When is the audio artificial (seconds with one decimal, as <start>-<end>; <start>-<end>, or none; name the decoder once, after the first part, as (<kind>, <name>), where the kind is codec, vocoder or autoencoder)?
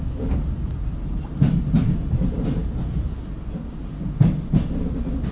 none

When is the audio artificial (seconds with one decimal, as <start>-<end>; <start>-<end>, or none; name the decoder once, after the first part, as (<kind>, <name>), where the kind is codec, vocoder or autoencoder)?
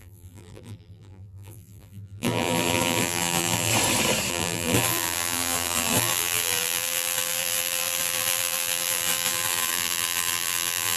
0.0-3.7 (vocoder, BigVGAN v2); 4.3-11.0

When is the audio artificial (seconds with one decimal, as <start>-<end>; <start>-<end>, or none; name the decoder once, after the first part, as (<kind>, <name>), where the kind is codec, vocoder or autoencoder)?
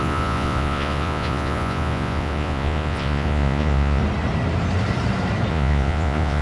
0.0-4.0 (vocoder, Vocos); 5.5-6.4